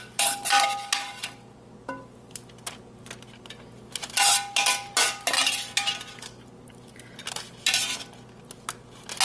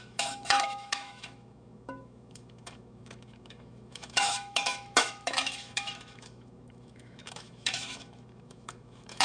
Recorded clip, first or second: first